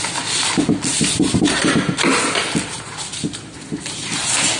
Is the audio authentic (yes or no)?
yes